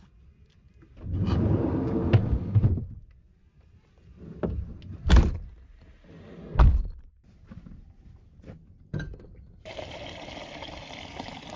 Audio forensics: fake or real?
real